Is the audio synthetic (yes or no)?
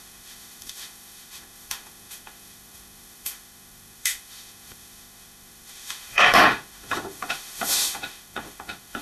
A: yes